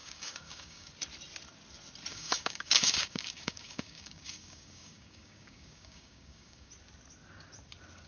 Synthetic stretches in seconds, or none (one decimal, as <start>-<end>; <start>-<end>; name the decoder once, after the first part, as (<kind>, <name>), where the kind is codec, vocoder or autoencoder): 0.0-0.9 (codec, DAC); 2.1-6.7